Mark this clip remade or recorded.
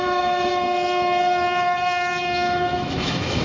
remade